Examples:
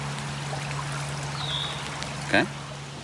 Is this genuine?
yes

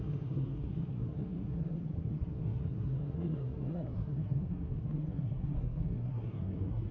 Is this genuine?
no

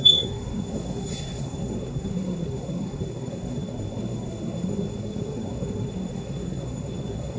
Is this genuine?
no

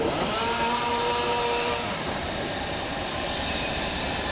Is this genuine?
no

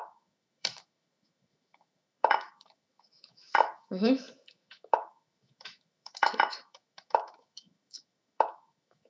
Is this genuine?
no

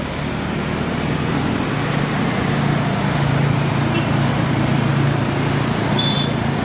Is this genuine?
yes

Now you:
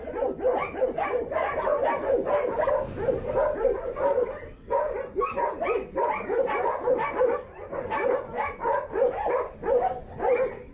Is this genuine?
yes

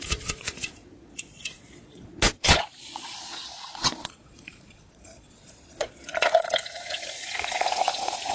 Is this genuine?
no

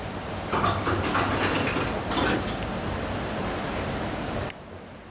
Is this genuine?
yes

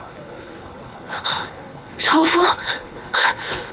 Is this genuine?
no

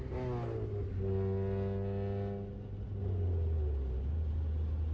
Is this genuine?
yes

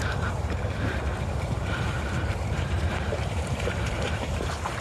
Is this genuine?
no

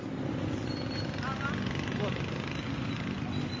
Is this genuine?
yes